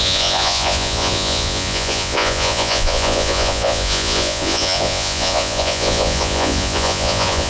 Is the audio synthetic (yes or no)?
yes